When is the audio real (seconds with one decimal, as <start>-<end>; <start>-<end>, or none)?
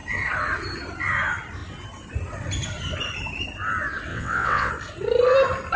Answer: 0.0-4.1; 4.7-5.8